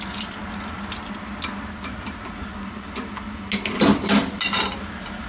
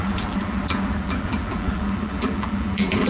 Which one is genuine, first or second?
first